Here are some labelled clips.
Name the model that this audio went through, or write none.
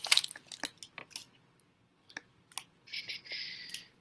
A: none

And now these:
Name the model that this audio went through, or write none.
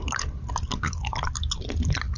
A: none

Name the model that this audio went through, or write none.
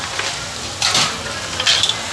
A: none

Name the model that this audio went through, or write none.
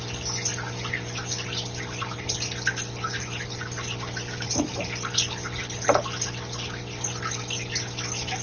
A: none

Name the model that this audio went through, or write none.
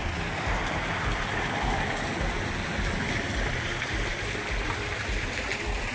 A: none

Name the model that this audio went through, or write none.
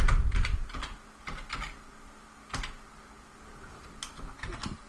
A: none